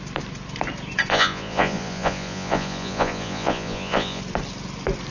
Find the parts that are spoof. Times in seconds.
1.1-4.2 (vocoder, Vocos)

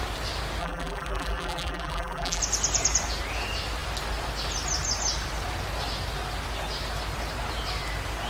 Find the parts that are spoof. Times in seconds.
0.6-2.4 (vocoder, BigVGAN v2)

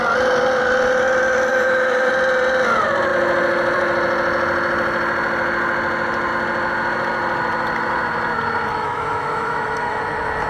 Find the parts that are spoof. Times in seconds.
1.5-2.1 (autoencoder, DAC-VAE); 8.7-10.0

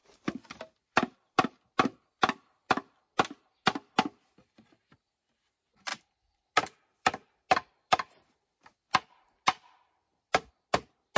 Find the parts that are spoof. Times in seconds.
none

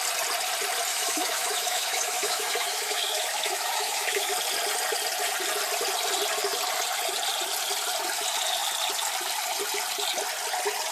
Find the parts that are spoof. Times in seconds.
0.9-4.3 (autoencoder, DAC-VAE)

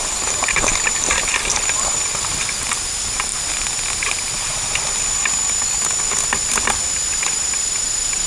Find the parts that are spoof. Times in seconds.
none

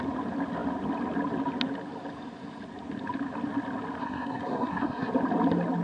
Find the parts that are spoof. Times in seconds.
4.0-5.1 (codec, SNAC)